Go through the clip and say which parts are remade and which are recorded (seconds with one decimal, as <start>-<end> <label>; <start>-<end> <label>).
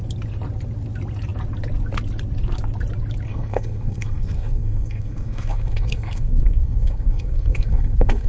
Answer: 0.0-3.3 recorded; 3.3-8.3 remade